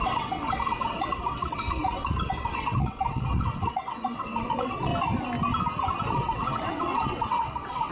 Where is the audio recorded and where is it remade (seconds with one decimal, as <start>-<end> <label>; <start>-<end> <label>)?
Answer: 0.0-4.9 remade; 4.9-6.1 recorded; 6.1-7.9 remade